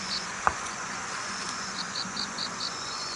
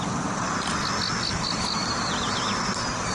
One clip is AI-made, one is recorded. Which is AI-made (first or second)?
first